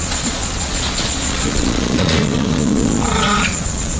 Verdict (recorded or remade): remade